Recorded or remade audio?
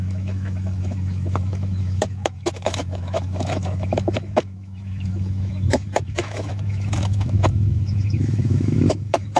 remade